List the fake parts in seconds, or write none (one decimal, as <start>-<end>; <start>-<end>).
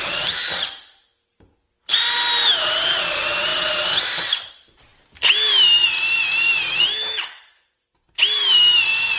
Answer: none